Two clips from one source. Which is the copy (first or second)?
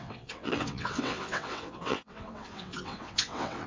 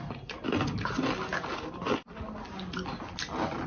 first